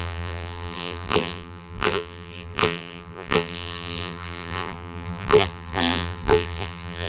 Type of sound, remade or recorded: remade